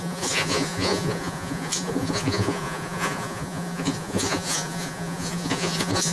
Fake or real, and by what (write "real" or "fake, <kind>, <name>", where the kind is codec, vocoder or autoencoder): fake, vocoder, Vocos